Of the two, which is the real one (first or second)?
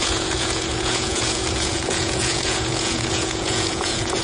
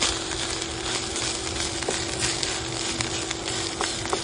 second